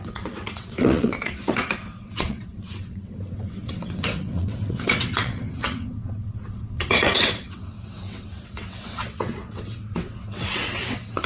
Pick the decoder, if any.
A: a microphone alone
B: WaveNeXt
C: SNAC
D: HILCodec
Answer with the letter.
B